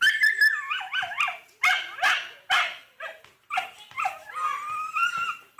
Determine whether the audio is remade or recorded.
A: recorded